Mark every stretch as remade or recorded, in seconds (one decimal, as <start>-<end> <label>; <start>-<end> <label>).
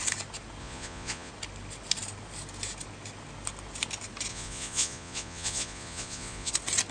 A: 0.0-0.6 recorded; 0.6-1.3 remade; 1.3-4.3 recorded; 4.3-6.5 remade; 6.5-6.9 recorded